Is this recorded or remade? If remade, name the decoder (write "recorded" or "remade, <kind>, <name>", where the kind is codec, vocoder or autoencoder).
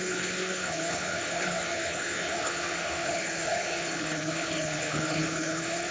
remade, codec, HILCodec